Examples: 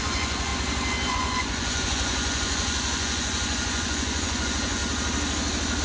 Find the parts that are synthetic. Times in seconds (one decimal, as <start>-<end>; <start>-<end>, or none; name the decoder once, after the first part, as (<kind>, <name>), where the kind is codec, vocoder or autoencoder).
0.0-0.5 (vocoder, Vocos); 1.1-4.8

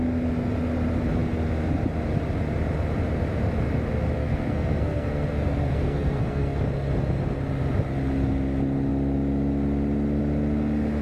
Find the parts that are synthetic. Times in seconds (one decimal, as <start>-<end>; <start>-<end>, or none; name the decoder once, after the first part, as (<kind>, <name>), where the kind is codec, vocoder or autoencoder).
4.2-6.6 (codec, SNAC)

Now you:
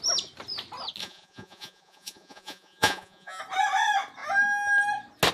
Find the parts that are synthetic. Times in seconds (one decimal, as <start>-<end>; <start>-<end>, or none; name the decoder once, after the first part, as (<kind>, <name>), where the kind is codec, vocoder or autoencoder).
1.0-3.4 (vocoder, Vocos)

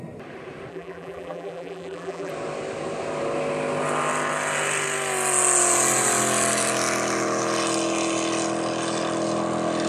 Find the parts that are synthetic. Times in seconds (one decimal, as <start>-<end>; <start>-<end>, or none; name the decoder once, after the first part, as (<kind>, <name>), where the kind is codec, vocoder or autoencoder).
0.7-2.3 (vocoder, BigVGAN v2)

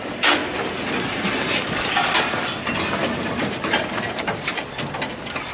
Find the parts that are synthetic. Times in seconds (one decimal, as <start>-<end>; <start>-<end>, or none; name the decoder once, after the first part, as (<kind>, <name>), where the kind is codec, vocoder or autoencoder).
0.4-2.2 (vocoder, BigVGAN v2); 3.0-4.7

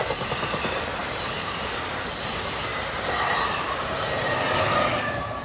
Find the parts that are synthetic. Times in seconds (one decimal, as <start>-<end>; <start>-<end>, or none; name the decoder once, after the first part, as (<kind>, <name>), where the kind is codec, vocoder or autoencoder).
0.0-2.7 (vocoder, BigVGAN v2); 3.6-5.4

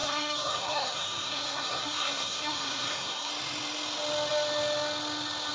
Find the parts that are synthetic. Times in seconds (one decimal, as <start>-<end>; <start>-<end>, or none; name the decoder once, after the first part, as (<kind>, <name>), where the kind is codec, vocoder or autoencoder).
0.0-3.3 (codec, SNAC)